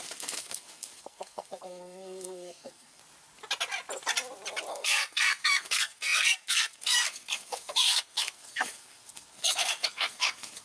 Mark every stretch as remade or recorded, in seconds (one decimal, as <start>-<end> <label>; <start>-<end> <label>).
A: 0.0-3.0 remade; 3.0-4.7 recorded; 4.7-10.6 remade